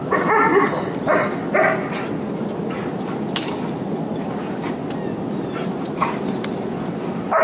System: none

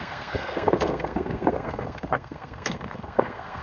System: codec, SNAC